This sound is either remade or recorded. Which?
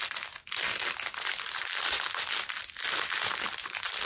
recorded